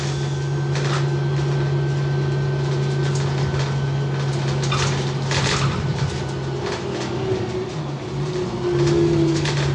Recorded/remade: recorded